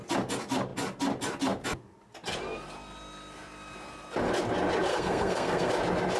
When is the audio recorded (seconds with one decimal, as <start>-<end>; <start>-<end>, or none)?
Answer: 0.0-4.9; 5.7-6.2